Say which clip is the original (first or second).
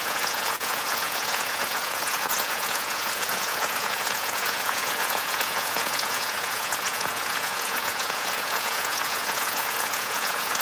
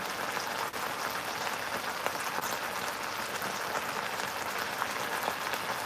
second